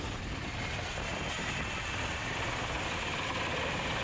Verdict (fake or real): real